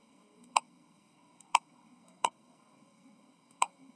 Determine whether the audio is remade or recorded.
remade